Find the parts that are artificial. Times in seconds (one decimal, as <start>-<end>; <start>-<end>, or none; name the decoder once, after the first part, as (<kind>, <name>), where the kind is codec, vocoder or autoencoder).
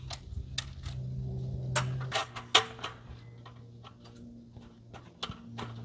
none